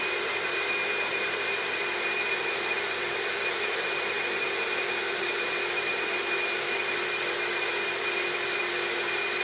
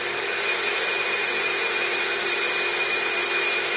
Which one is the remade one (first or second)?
first